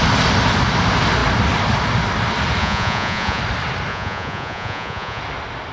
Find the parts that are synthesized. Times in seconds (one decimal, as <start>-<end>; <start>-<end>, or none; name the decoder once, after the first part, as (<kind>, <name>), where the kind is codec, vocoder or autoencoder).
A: 2.6-3.4 (vocoder, Vocos); 3.9-5.2